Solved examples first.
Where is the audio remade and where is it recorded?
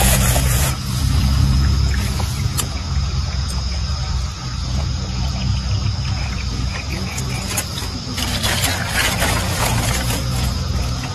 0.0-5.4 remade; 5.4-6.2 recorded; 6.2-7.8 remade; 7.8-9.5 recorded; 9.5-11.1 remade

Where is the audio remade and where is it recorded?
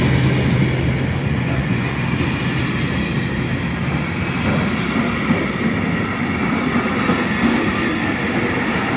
0.0-1.2 recorded; 1.2-2.0 remade; 2.0-9.0 recorded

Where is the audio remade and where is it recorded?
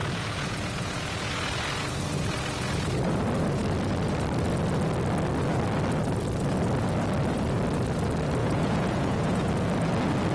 0.0-1.3 remade; 1.3-8.4 recorded; 8.4-9.5 remade; 9.5-10.3 recorded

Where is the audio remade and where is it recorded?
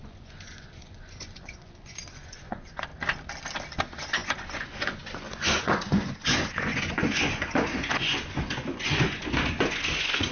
0.0-2.9 remade; 2.9-3.8 recorded; 3.8-10.3 remade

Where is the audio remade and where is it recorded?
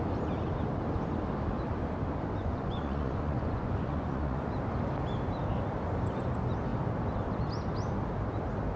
0.0-2.4 recorded; 2.4-4.5 remade; 4.5-8.8 recorded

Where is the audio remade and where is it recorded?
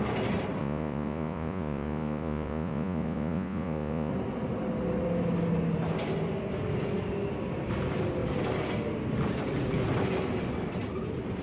0.0-0.6 recorded; 0.6-4.1 remade; 4.1-11.4 recorded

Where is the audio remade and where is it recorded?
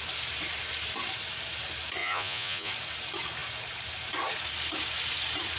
0.0-2.0 recorded; 2.0-2.7 remade; 2.7-5.6 recorded